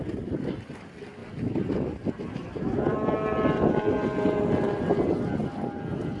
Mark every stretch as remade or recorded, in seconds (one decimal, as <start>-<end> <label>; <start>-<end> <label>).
0.0-6.2 recorded